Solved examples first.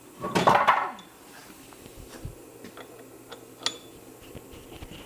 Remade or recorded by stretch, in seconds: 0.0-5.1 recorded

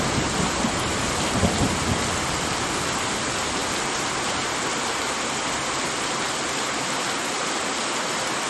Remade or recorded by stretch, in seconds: 0.0-8.5 recorded

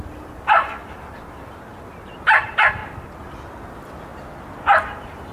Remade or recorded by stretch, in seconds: 0.0-5.3 recorded

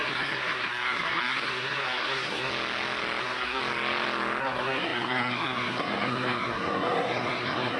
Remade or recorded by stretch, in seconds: 0.0-2.5 remade; 2.5-3.2 recorded; 3.2-3.6 remade; 3.6-4.4 recorded; 4.4-7.8 remade

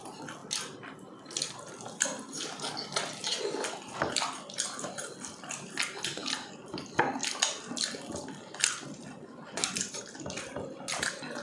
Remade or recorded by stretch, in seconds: 0.0-11.4 recorded

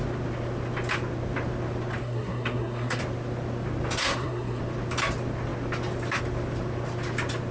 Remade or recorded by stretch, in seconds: 0.0-2.0 recorded; 2.0-3.0 remade; 3.0-4.0 recorded; 4.0-4.6 remade; 4.6-7.5 recorded

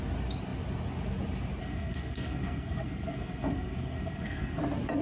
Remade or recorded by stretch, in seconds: 0.0-1.6 recorded; 1.6-4.6 remade; 4.6-5.0 recorded